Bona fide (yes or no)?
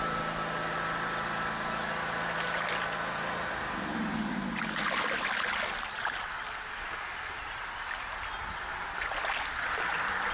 yes